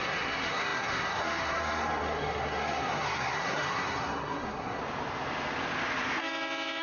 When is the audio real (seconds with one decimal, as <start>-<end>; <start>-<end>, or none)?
4.8-6.8